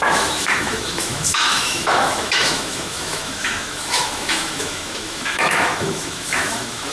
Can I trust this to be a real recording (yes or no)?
no